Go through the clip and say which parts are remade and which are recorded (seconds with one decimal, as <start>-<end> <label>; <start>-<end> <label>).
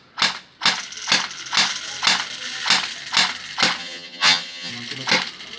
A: 0.0-3.8 recorded; 3.8-4.7 remade; 4.7-5.6 recorded